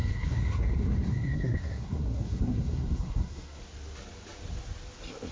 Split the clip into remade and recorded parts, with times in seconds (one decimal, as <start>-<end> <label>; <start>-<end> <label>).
0.0-3.6 remade; 3.6-5.3 recorded